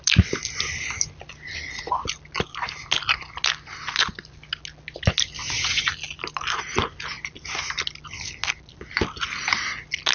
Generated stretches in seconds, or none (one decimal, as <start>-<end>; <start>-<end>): 5.4-5.9